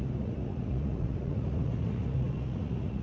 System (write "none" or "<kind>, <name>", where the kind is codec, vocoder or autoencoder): vocoder, Vocos